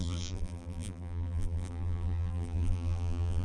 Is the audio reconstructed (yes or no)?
yes